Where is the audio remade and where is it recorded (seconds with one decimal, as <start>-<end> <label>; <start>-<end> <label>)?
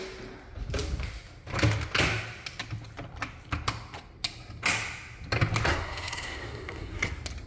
0.0-5.7 recorded; 5.7-7.1 remade; 7.1-7.5 recorded